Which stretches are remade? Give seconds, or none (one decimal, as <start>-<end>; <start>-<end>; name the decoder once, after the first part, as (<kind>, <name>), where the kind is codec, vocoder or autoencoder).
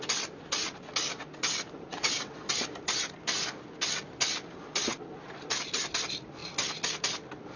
1.9-2.5 (vocoder, WaveNeXt)